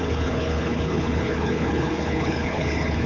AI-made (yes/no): yes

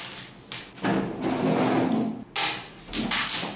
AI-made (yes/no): no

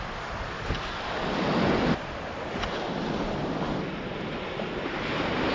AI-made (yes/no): no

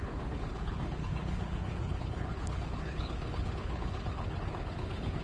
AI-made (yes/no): yes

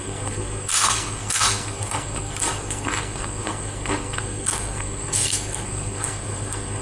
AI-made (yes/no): yes